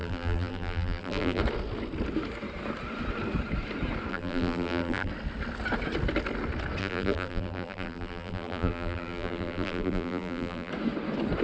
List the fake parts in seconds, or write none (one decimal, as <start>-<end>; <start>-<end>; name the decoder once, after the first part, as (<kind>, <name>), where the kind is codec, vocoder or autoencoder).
0.0-1.4 (vocoder, BigVGAN v2); 4.1-5.1; 6.8-10.7